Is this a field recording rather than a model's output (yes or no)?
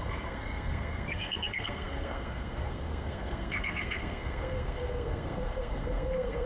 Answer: no